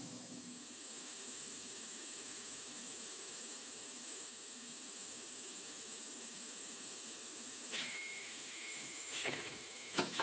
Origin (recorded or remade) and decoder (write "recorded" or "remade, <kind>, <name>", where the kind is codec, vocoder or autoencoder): remade, autoencoder, DAC-VAE